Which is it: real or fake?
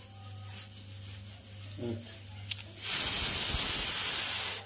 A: real